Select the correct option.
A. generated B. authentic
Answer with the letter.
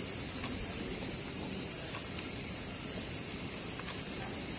B